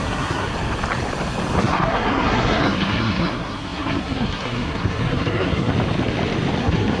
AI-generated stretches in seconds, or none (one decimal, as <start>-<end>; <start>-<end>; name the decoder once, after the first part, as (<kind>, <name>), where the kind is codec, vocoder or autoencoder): 0.0-0.5 (codec, SNAC); 1.6-5.7; 6.6-7.0